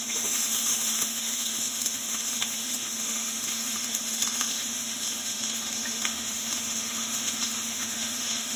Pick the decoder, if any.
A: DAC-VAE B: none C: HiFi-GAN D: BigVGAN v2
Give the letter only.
A